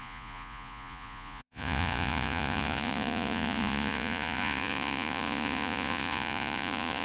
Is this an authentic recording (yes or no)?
no